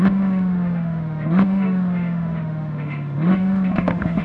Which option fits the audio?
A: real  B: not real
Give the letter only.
B